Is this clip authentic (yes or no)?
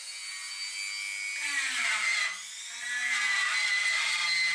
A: yes